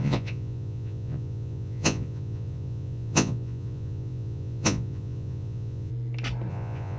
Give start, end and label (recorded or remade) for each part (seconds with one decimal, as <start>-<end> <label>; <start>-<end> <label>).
0.0-5.9 remade; 5.9-6.5 recorded; 6.5-7.0 remade